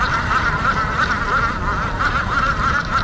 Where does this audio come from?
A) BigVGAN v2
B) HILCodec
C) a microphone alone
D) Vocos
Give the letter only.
C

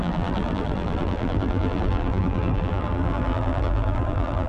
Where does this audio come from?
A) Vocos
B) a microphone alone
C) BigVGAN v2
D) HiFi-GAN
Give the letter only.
C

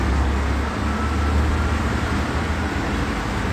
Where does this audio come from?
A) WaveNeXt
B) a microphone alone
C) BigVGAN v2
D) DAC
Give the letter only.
B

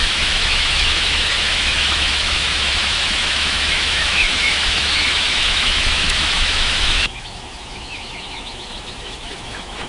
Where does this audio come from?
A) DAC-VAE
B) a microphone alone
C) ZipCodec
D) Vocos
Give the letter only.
A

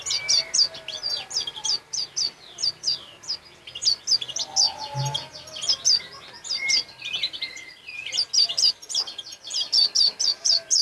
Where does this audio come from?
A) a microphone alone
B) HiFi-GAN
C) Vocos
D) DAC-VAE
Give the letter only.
A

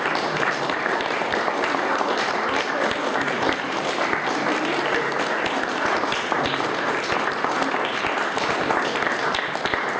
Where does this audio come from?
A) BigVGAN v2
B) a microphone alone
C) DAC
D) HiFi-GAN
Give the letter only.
B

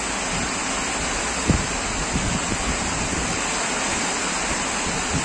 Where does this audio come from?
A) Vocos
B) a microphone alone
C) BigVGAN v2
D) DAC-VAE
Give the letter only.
B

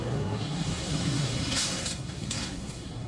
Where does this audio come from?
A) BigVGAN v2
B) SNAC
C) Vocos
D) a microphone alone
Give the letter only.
B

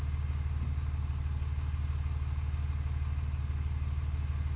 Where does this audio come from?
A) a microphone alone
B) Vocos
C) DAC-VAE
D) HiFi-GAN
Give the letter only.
A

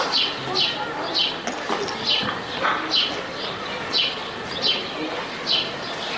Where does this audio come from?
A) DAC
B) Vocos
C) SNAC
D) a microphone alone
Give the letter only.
D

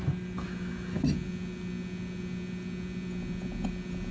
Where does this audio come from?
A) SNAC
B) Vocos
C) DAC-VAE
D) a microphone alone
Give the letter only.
D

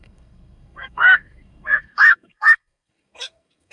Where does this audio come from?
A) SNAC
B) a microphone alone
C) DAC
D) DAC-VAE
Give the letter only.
A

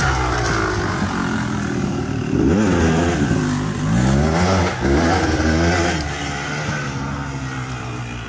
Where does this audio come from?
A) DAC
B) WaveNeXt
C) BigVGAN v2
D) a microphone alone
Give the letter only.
D